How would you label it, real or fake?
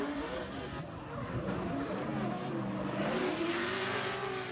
real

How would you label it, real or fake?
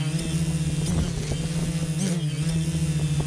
real